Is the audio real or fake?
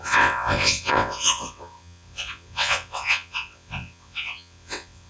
fake